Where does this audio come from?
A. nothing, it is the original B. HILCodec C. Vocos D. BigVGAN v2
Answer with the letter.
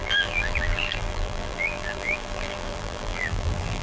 D